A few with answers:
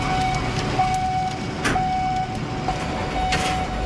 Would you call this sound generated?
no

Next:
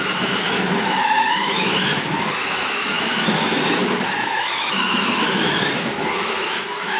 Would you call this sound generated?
yes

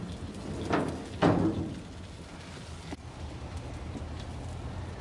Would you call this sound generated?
no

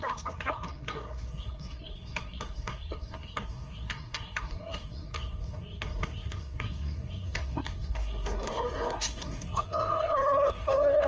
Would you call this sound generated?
yes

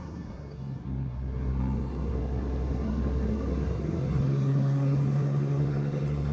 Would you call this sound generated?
yes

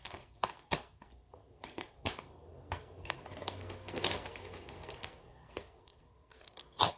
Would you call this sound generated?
yes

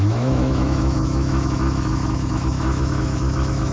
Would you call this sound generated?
yes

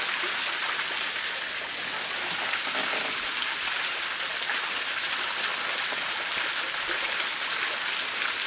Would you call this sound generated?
no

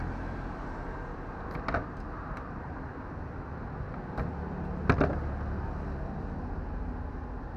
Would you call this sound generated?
no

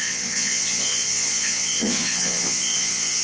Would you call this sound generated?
yes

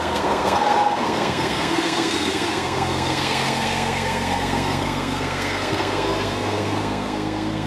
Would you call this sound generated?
yes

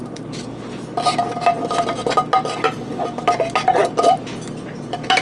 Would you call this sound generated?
no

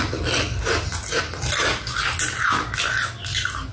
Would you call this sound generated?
no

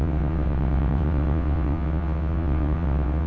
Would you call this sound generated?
yes